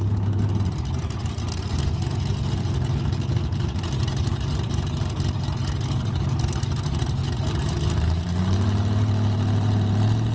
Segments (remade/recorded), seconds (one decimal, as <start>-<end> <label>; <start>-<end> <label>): 0.0-10.3 recorded